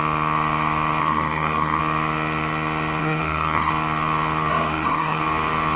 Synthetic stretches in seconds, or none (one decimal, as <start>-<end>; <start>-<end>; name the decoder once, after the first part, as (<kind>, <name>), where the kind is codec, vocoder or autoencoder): 1.0-1.8 (codec, SNAC); 3.0-3.7; 4.5-5.2